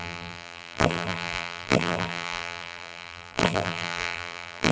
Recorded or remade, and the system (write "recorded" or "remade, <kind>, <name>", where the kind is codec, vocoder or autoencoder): remade, vocoder, BigVGAN v2